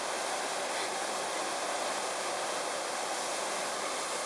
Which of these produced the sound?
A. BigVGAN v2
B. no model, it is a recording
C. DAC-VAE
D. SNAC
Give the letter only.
B